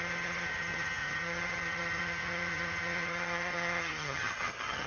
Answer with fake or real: fake